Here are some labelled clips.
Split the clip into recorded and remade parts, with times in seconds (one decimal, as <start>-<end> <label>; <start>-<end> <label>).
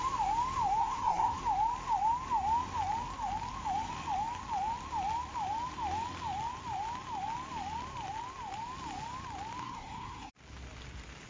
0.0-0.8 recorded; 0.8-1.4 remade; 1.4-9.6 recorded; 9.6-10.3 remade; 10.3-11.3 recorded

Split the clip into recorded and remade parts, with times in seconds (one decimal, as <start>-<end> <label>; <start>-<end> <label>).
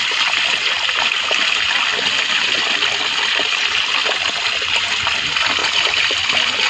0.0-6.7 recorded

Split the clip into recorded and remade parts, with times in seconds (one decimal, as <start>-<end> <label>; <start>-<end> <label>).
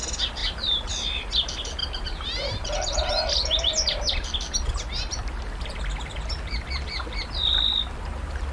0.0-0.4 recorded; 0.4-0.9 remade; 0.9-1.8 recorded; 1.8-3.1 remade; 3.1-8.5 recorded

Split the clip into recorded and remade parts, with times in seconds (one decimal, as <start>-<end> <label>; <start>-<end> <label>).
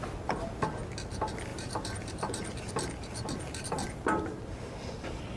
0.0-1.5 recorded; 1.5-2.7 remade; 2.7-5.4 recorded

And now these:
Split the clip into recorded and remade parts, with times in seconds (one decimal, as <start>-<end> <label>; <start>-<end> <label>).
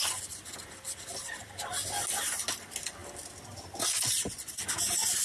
0.0-5.2 recorded